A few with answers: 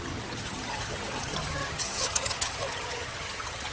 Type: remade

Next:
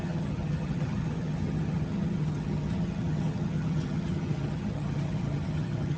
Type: remade